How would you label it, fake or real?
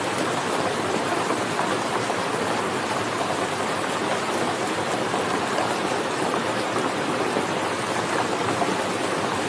real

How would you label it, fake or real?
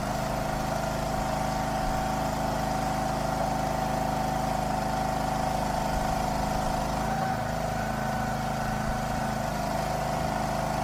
real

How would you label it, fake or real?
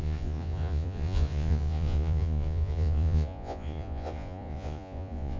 fake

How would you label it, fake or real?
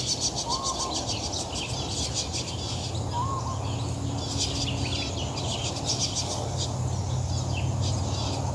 real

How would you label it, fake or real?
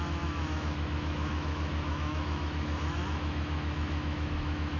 fake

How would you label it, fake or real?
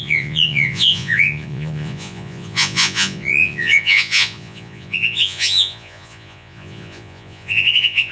fake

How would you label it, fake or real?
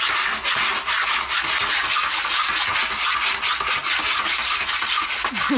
real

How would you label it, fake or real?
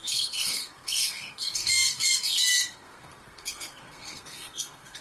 fake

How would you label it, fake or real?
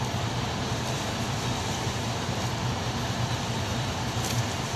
fake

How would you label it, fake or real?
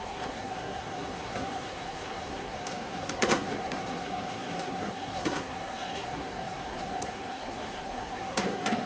fake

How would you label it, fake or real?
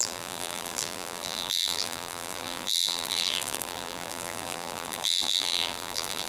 fake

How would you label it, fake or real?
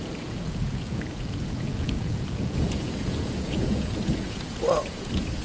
fake